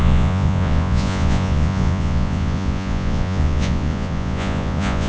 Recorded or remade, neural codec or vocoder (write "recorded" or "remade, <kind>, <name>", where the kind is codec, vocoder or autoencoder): remade, vocoder, Vocos